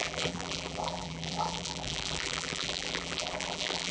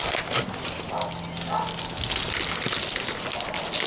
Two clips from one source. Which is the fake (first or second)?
first